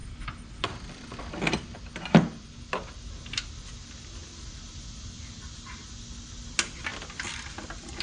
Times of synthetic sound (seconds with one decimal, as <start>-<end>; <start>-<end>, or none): 0.0-1.2; 6.9-8.0